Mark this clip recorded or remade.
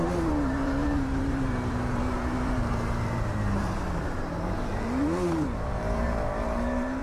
remade